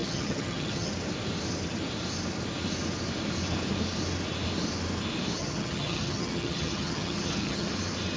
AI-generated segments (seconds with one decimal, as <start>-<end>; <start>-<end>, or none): 0.0-0.9; 5.4-7.7